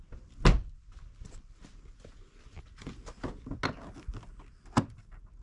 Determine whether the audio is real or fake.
real